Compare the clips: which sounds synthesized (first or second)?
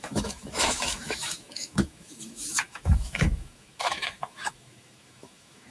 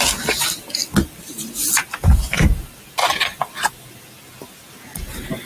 first